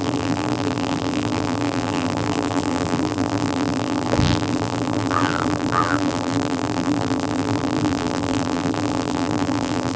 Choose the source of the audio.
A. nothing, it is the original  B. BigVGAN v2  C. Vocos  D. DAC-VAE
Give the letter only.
B